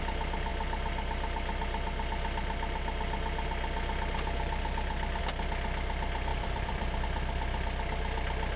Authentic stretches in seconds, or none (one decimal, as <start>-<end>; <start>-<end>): 0.0-6.3; 7.0-8.6